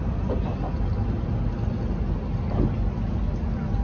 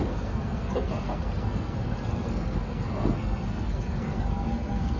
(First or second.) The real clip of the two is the first